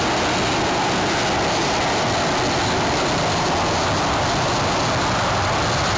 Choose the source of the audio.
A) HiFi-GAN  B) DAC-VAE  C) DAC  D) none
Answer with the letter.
D